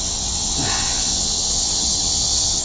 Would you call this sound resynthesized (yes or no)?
yes